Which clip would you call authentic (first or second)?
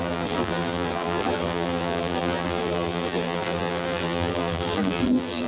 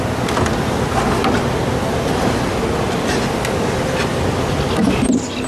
second